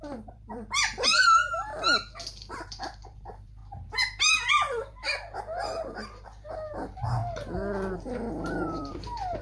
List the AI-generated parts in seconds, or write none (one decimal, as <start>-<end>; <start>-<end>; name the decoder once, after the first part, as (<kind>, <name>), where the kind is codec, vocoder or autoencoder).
0.0-1.7 (vocoder, BigVGAN v2); 2.5-3.6; 4.5-7.2; 7.9-9.4